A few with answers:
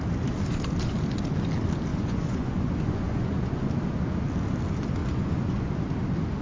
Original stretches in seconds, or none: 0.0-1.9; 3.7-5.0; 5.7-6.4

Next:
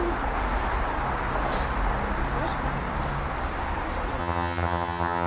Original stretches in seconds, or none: 0.0-4.2

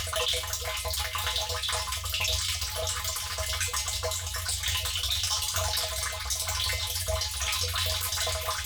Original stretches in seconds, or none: 0.0-8.7

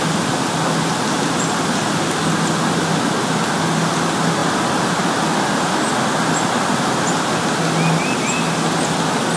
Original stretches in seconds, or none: 0.0-9.4

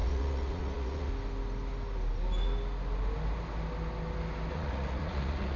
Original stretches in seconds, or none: 1.1-4.5

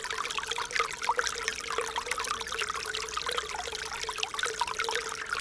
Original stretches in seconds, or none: 0.0-5.4

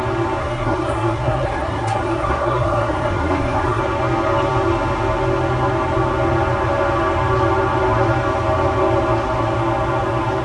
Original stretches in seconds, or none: 0.0-0.4; 3.8-10.4